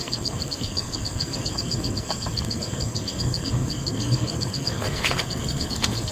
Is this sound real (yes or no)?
no